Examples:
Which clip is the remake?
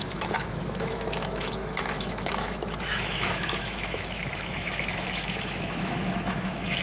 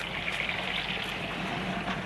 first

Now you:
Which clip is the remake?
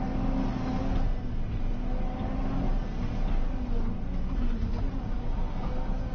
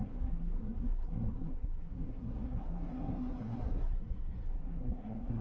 second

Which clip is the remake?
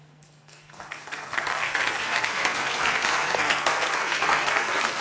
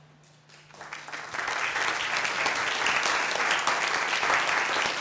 first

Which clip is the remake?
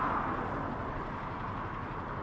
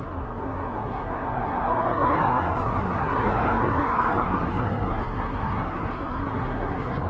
second